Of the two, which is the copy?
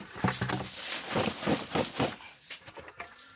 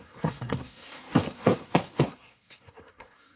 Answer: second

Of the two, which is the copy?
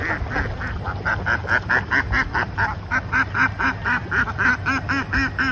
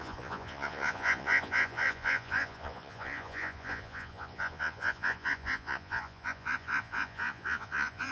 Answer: second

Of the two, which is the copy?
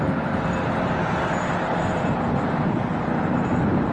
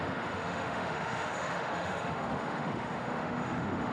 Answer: second